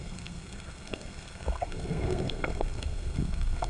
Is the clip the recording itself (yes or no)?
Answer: no